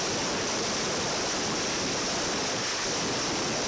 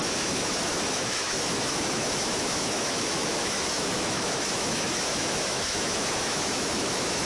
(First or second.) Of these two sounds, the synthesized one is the second